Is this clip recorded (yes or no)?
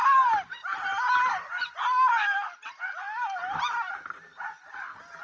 yes